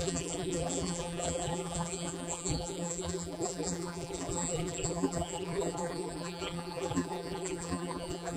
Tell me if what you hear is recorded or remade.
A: remade